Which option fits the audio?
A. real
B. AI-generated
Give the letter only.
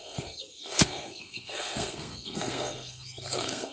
B